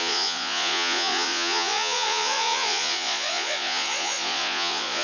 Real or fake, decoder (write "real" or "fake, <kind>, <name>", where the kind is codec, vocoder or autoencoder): fake, vocoder, Vocos